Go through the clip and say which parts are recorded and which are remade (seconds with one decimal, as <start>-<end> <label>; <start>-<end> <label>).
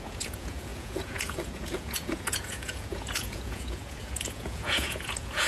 0.0-5.5 remade